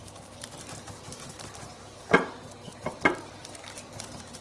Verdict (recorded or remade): remade